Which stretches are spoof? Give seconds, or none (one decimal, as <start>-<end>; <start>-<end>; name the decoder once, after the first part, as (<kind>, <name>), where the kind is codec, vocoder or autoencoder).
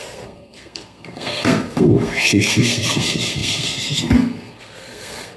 0.0-5.4 (codec, SNAC)